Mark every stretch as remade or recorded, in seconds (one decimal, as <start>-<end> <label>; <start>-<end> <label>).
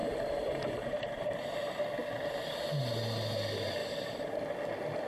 0.0-1.8 remade; 1.8-3.8 recorded; 3.8-4.3 remade; 4.3-5.1 recorded